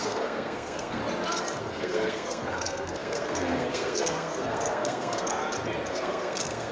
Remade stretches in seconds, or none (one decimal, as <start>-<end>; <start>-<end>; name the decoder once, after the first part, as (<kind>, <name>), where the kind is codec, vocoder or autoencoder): 0.0-1.0 (codec, SNAC); 1.6-5.4; 5.9-6.7